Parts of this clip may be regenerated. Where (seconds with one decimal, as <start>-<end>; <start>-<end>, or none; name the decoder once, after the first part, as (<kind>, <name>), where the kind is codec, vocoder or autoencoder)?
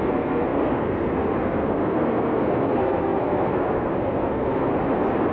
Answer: 0.0-4.7 (codec, SNAC)